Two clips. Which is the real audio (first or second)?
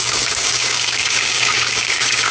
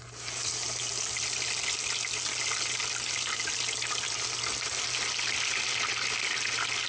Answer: second